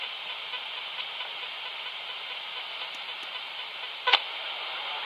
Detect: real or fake real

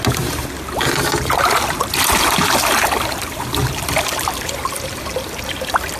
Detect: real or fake real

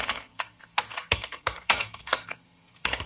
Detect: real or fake fake